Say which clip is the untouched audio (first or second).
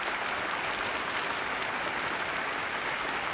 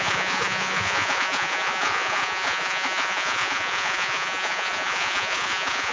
first